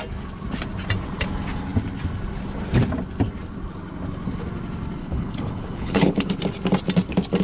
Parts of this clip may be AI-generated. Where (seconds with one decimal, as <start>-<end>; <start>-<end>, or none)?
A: 5.0-6.3